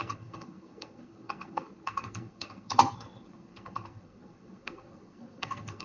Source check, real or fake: fake